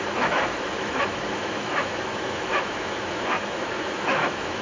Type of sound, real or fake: fake